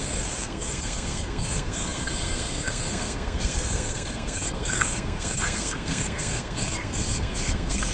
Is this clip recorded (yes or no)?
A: no